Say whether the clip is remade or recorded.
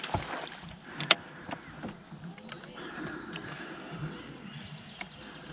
recorded